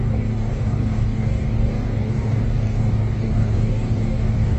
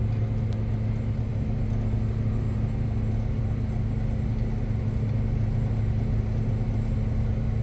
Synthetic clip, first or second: first